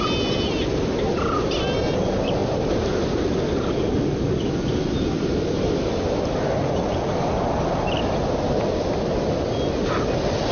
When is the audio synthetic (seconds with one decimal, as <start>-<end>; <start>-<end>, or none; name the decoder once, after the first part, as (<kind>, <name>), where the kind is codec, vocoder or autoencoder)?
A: none